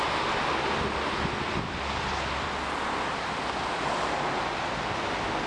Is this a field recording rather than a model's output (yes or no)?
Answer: yes